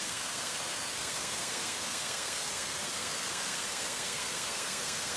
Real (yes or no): no